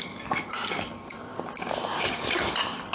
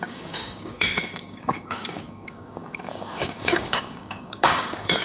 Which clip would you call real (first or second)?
first